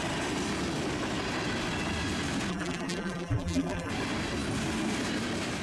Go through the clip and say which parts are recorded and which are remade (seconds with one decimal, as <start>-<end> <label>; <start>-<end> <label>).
0.0-2.5 recorded; 2.5-3.9 remade; 3.9-5.6 recorded